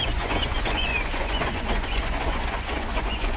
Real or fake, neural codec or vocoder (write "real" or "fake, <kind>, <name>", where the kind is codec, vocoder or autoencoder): fake, vocoder, Vocos